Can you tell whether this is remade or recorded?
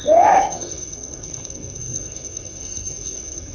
remade